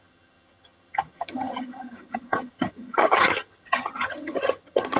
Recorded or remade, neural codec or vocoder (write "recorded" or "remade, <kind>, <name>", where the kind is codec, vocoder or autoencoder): remade, vocoder, HiFi-GAN